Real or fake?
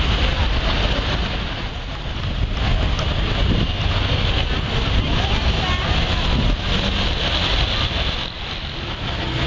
real